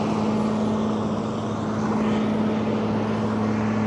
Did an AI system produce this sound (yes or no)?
no